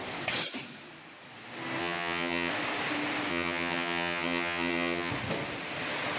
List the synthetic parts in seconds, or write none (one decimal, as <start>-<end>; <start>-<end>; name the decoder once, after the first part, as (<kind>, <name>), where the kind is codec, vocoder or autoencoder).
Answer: 1.8-2.5 (vocoder, HiFi-GAN); 3.3-5.1